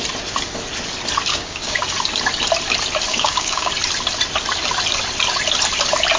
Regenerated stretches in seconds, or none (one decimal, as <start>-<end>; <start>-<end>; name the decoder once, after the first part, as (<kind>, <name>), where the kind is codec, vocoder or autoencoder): 1.3-1.8 (codec, DAC); 3.1-3.7